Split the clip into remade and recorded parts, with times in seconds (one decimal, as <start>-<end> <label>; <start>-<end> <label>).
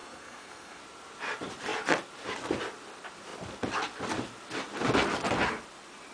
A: 0.0-0.8 remade; 0.8-6.1 recorded